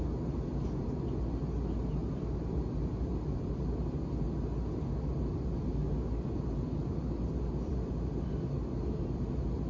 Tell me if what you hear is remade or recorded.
recorded